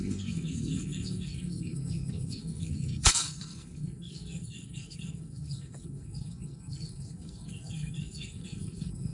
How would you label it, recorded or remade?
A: remade